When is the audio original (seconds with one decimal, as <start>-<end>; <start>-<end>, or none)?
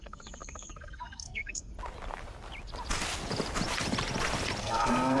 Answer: 1.7-4.6